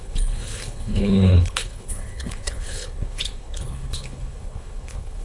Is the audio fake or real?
fake